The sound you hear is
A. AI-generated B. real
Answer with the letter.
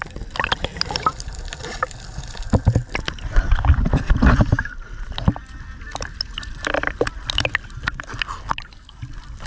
B